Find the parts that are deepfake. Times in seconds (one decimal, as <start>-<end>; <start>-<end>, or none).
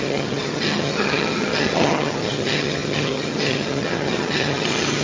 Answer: 0.0-5.0